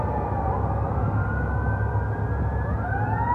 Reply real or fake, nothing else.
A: real